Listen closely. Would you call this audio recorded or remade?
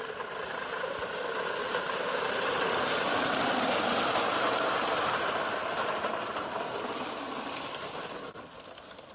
remade